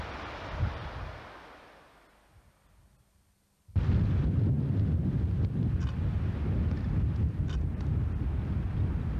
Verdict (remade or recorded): recorded